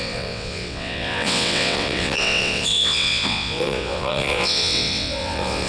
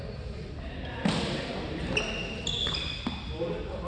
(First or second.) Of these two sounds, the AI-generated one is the first